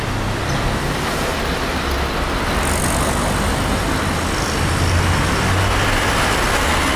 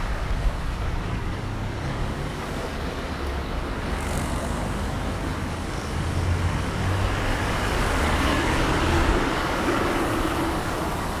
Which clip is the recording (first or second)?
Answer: first